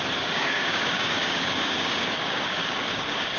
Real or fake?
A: fake